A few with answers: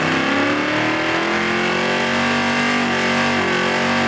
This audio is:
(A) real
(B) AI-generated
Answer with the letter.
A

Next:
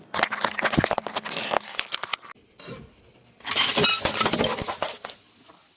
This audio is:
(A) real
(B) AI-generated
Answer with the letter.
A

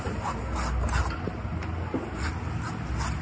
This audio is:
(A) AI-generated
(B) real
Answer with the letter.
B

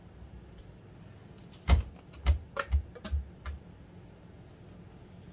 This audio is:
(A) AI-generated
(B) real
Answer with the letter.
B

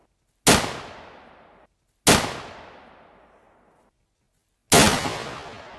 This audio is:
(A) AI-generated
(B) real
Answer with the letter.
B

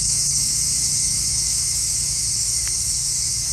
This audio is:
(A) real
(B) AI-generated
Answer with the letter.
B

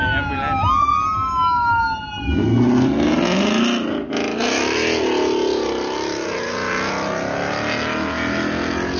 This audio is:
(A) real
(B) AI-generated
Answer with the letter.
A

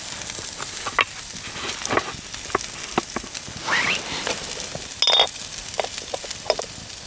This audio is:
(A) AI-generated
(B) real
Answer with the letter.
B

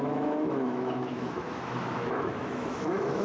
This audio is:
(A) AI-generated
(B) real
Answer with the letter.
A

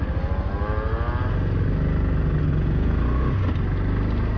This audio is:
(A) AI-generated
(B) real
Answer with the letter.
B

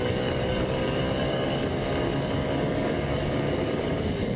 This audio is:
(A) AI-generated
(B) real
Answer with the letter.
A